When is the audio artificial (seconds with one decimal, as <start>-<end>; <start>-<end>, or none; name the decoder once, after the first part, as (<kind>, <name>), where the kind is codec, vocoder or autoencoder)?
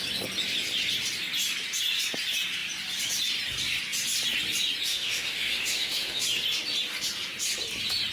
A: 4.9-6.2 (autoencoder, DAC-VAE)